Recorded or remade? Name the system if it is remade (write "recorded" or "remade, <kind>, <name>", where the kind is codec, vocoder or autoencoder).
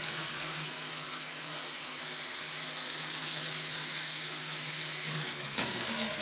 remade, codec, SNAC